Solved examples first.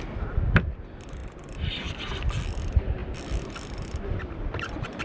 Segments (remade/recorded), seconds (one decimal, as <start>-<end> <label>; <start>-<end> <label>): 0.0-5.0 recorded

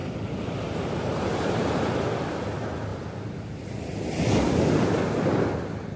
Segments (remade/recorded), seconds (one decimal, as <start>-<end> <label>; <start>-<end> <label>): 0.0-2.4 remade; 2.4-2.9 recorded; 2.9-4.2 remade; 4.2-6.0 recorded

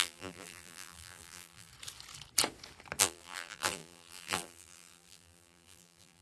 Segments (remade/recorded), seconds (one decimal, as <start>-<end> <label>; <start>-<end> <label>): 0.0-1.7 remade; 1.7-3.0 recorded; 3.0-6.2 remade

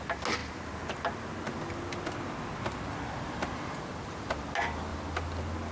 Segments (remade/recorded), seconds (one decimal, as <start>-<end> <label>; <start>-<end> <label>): 0.0-5.7 recorded